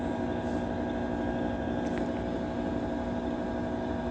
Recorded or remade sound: recorded